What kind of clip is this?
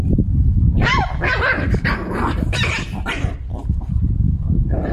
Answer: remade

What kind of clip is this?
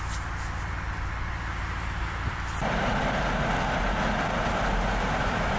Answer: recorded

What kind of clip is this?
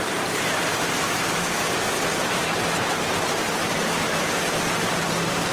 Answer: remade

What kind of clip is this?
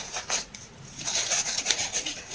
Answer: remade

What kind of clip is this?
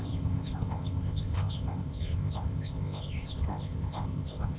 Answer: remade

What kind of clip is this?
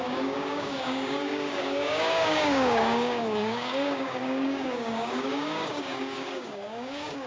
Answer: remade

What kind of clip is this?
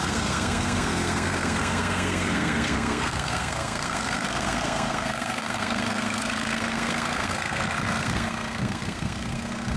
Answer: remade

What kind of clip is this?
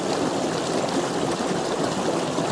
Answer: recorded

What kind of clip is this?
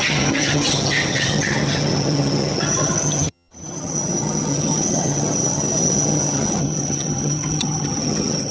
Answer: remade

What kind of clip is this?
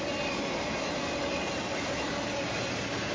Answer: recorded